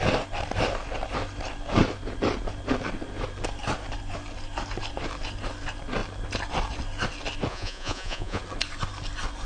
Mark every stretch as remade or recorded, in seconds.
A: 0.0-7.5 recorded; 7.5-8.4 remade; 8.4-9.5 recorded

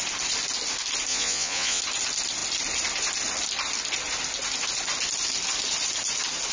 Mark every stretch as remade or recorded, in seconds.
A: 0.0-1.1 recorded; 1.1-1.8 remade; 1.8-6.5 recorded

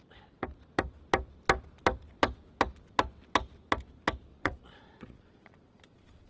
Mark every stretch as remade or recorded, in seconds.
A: 0.0-4.3 recorded; 4.3-6.3 remade